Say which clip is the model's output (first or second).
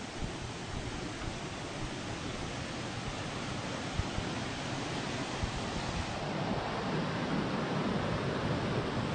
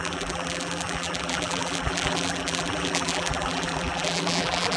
second